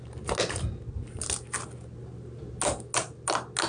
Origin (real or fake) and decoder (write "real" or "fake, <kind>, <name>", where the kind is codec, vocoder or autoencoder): real